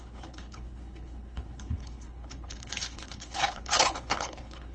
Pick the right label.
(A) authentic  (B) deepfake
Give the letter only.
B